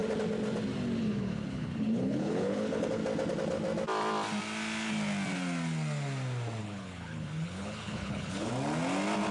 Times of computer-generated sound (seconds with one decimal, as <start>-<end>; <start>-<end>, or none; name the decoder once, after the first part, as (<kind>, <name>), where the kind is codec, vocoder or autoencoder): 1.0-3.0 (codec, HILCodec); 6.6-8.5